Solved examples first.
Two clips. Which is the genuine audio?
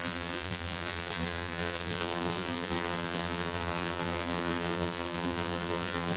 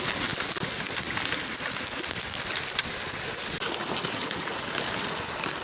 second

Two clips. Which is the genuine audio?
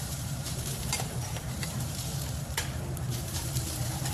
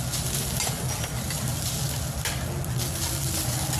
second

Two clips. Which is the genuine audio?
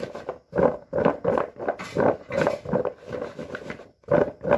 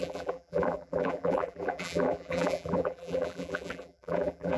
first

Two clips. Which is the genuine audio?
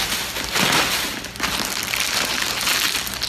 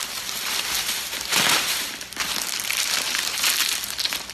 first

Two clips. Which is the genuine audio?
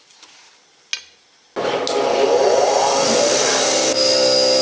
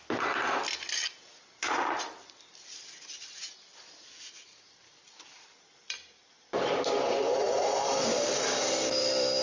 first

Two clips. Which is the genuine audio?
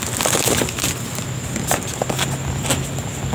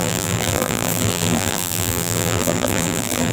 first